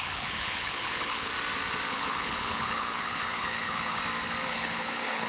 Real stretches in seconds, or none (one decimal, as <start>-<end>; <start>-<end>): 1.3-1.9; 4.0-4.5